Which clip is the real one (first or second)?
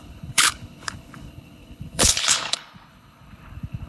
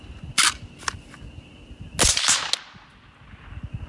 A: second